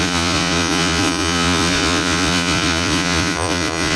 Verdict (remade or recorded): remade